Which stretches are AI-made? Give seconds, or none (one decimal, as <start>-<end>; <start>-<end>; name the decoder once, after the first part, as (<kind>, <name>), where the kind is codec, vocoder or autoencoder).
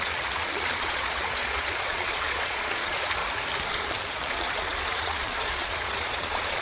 0.0-3.2 (vocoder, Vocos); 3.7-6.6